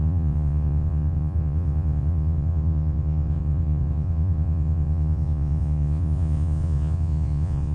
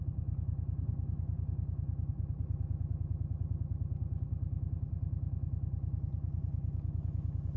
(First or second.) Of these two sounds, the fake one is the first